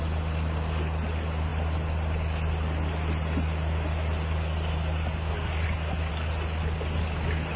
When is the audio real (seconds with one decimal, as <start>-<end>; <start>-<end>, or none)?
0.0-7.6